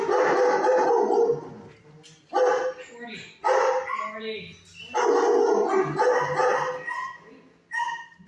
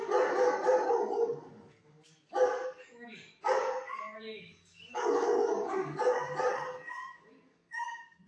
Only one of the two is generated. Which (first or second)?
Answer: second